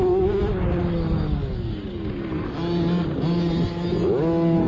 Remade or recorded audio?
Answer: recorded